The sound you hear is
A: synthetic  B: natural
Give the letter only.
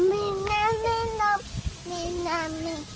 B